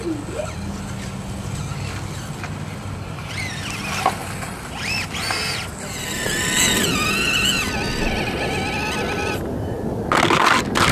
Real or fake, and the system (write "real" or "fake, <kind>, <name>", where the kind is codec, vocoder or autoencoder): real